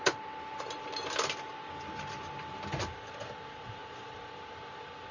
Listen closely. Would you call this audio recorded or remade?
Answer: recorded